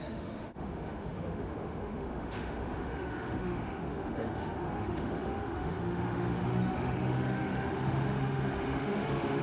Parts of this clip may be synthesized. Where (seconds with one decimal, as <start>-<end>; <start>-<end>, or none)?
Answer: 0.0-9.4